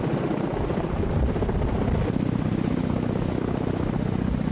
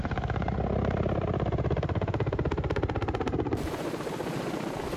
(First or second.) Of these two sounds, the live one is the first